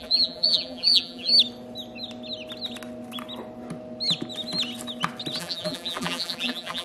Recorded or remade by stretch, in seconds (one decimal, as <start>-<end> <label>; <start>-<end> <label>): 0.0-1.3 remade; 1.3-5.4 recorded; 5.4-6.8 remade